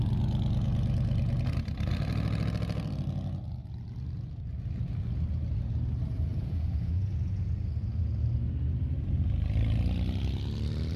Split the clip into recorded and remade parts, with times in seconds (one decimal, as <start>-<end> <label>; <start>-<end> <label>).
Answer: 0.0-6.3 recorded; 6.3-7.5 remade; 7.5-11.0 recorded